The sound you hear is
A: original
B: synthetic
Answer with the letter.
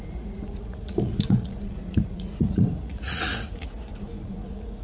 B